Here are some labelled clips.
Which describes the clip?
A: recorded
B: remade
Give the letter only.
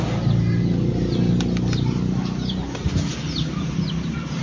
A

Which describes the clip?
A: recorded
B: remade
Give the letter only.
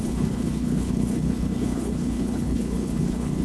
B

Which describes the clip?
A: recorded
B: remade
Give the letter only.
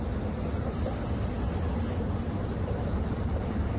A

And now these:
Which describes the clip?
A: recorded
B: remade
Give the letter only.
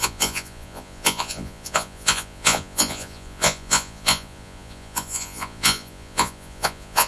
B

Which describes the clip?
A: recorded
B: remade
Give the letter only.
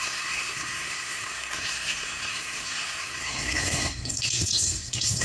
B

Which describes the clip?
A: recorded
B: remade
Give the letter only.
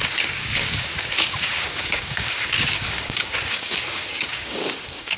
B